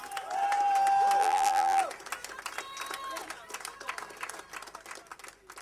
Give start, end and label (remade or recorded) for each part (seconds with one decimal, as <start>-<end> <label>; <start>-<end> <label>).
0.0-1.2 recorded; 1.2-1.8 remade; 1.8-5.6 recorded